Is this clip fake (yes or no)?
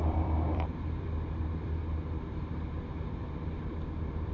yes